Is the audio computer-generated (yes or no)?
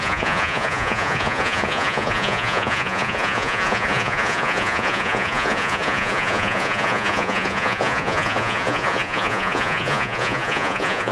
yes